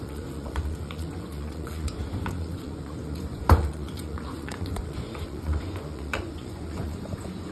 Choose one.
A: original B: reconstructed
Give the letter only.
B